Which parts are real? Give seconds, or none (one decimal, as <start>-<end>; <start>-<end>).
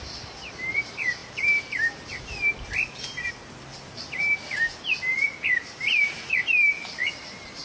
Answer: none